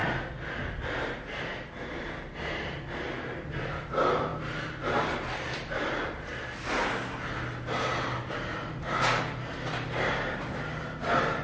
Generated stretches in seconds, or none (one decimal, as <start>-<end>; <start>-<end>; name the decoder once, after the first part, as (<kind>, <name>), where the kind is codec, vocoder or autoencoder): 0.0-4.3 (vocoder, BigVGAN v2); 5.5-6.3; 10.3-11.4